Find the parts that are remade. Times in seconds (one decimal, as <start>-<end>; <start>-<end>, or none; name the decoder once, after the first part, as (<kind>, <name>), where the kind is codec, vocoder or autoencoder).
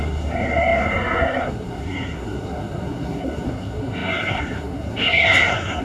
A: 0.0-5.8 (codec, SNAC)